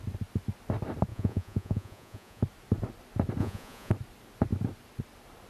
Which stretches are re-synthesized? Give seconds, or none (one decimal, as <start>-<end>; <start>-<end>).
1.1-2.4; 3.4-3.9